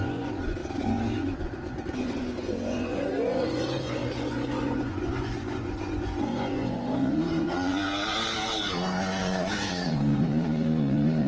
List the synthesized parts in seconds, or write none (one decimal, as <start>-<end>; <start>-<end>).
0.0-7.8; 9.2-11.3